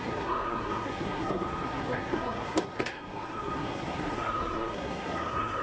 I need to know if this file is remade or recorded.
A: remade